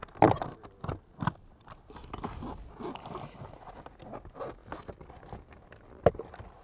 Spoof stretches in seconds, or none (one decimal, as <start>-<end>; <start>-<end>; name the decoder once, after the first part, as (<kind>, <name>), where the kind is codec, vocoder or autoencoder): none